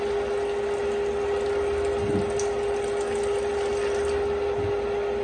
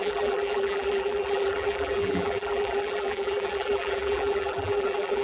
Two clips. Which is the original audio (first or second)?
first